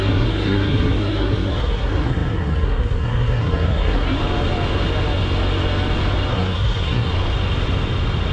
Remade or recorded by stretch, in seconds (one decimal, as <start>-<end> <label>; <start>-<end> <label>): 0.0-4.2 remade; 4.2-6.3 recorded; 6.3-7.1 remade; 7.1-8.3 recorded